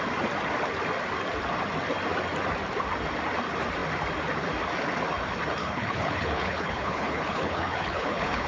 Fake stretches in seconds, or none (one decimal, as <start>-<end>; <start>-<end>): 5.6-8.5